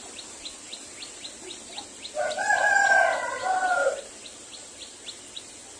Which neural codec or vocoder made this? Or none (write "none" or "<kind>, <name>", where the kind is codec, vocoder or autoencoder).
none